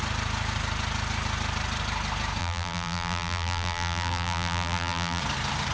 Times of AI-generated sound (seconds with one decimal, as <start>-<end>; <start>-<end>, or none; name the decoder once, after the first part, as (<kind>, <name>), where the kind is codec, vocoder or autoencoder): 2.4-5.2 (vocoder, BigVGAN v2)